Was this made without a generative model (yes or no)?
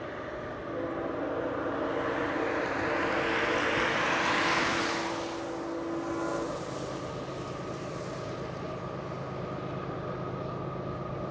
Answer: yes